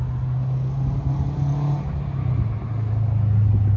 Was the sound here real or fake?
real